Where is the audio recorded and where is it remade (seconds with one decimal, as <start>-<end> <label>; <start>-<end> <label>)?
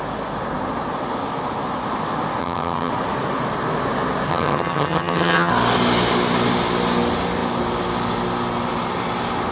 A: 0.0-2.4 recorded; 2.4-2.9 remade; 2.9-4.3 recorded; 4.3-5.5 remade; 5.5-9.5 recorded